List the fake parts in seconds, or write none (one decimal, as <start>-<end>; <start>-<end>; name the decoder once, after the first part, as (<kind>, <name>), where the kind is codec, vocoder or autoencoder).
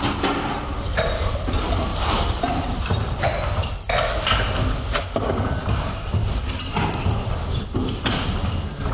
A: none